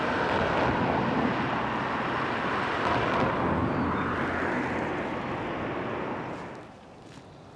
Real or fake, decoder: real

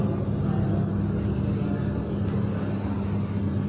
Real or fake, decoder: real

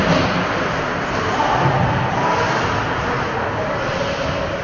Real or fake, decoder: real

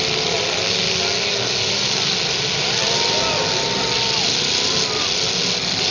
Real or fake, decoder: real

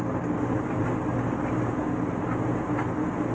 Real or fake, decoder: real